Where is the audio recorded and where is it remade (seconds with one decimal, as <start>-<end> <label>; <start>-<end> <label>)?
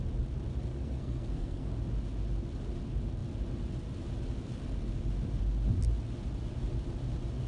0.0-0.7 recorded; 0.7-1.7 remade; 1.7-7.5 recorded